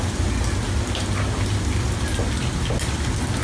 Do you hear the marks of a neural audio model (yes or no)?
no